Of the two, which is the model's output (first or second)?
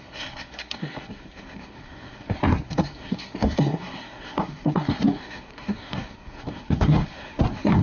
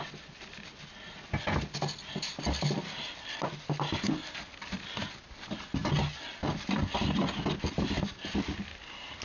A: first